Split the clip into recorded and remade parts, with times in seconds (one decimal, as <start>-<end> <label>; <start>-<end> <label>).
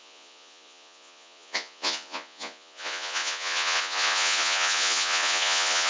0.0-5.9 remade